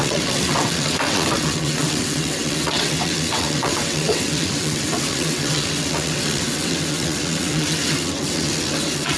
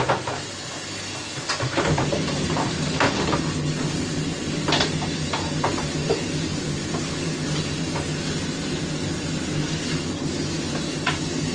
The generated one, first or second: first